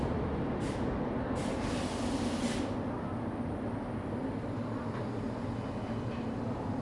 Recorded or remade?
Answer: recorded